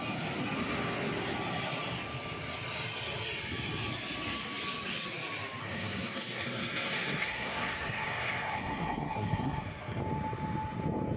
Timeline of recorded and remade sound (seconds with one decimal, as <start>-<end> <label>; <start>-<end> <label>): 0.0-5.6 recorded; 5.6-10.0 remade; 10.0-11.2 recorded